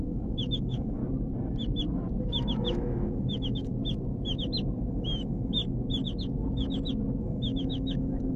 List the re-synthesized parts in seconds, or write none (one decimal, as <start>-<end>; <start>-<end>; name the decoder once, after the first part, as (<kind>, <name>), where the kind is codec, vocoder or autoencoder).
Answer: 0.0-1.0 (autoencoder, DAC-VAE); 2.2-3.7; 4.9-5.6; 7.2-8.4